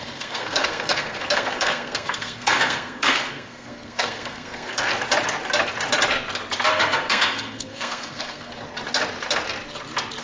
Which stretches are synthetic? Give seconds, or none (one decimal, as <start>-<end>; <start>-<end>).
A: 0.0-4.9; 6.7-8.5